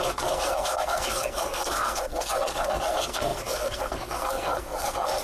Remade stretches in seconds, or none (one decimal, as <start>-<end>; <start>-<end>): 0.0-5.2